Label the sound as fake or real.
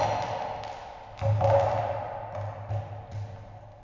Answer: real